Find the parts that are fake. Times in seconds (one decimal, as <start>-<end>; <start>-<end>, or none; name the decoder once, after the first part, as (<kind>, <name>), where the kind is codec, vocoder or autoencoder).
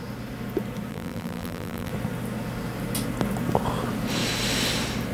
0.9-1.9 (vocoder, BigVGAN v2)